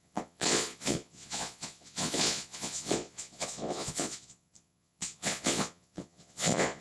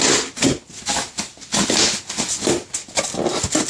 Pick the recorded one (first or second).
second